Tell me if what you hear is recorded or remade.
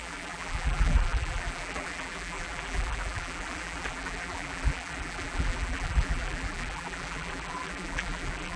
remade